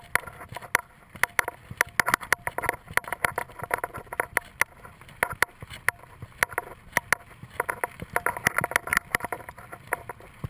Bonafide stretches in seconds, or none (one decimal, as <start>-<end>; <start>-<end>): 0.0-8.9; 10.1-10.5